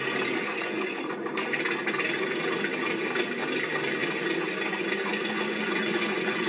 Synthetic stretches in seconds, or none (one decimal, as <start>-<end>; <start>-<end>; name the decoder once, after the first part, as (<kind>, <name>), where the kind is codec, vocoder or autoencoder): 0.4-1.0 (vocoder, Vocos); 5.1-6.5